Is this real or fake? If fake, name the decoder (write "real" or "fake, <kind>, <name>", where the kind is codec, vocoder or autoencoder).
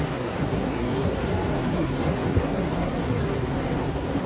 fake, codec, SNAC